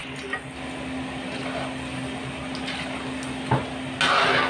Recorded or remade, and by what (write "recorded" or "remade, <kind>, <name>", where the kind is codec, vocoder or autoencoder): recorded